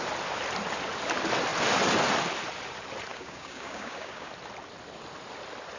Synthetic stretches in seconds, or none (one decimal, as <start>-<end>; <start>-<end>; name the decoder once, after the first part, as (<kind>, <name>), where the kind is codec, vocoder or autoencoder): 3.1-4.3 (codec, DAC)